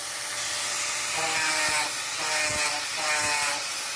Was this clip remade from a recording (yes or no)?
no